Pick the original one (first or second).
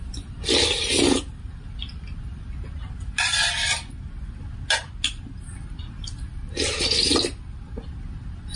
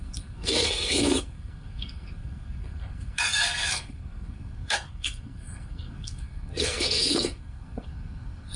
first